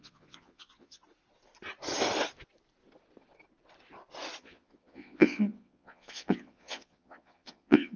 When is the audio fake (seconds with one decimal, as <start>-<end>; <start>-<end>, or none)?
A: 0.0-1.0; 4.4-8.0